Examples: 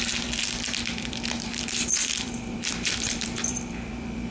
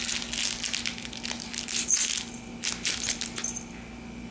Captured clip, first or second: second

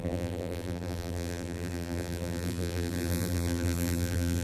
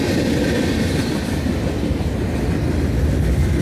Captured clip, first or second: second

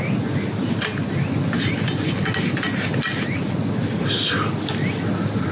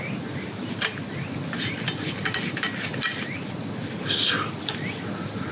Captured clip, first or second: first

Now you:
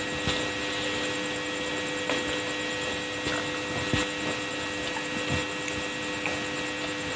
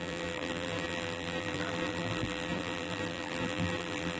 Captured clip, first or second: first